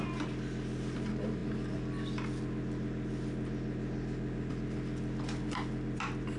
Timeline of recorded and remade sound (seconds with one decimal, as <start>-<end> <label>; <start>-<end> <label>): 0.0-6.4 recorded